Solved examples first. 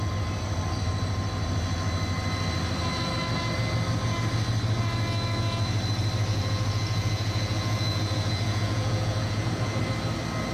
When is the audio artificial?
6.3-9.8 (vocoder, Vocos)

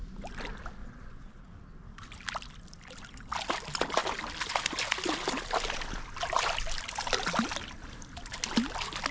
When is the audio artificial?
0.8-1.4 (vocoder, Vocos)